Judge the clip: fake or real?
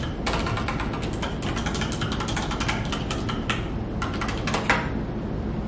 real